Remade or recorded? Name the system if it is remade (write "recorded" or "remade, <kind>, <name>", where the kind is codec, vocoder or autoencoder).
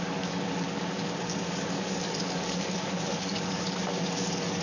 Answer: remade, codec, DAC